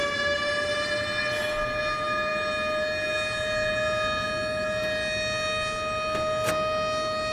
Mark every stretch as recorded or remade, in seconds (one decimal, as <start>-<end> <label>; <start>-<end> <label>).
0.0-7.3 recorded